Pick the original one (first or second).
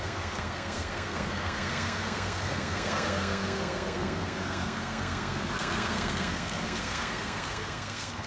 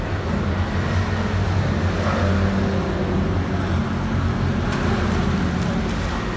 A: second